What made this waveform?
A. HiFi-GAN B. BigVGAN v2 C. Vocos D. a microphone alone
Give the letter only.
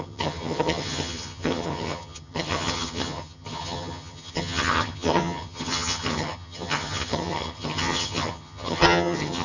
A